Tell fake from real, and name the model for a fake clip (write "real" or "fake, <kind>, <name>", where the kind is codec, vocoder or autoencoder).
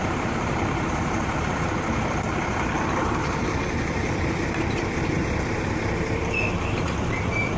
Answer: fake, vocoder, BigVGAN v2